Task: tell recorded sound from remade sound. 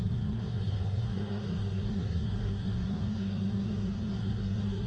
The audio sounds remade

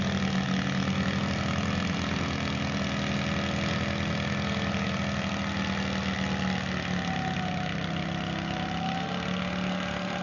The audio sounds recorded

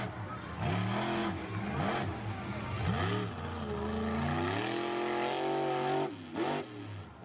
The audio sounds recorded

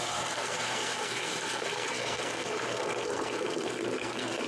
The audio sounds remade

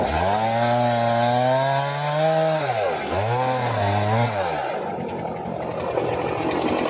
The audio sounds recorded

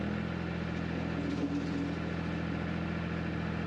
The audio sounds recorded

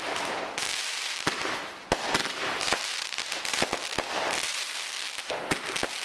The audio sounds recorded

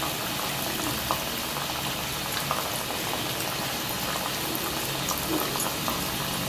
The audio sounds recorded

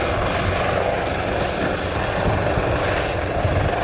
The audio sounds recorded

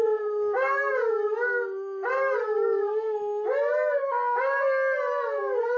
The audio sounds recorded